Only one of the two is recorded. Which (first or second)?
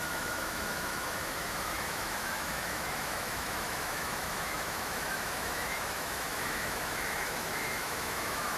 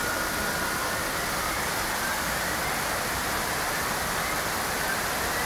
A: second